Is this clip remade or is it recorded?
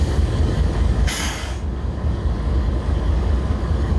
remade